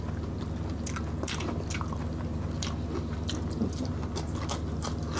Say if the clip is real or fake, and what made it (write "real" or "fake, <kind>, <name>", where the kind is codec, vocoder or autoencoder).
real